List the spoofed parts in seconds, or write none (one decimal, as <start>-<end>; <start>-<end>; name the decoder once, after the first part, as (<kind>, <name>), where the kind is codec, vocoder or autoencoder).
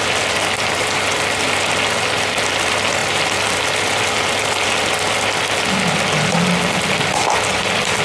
none